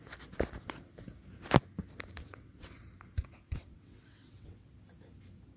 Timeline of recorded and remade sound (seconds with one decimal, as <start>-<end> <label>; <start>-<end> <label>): 0.0-2.1 recorded; 2.1-2.8 remade; 2.8-3.2 recorded; 3.2-4.7 remade; 4.7-5.6 recorded